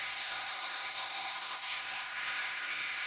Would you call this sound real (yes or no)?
no